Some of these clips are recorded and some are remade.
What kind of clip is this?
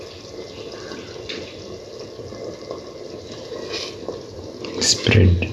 recorded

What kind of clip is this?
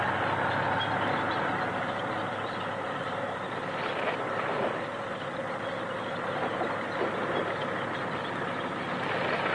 recorded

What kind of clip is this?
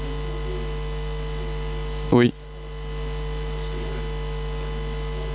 recorded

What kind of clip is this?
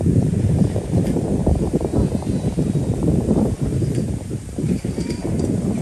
remade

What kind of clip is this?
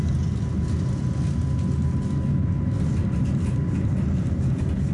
recorded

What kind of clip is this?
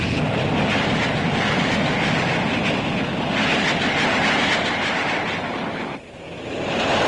recorded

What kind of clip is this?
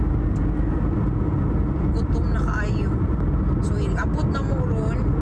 recorded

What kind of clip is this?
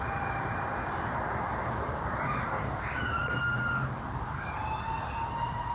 remade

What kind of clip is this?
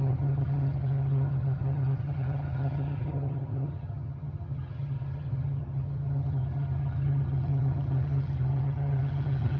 remade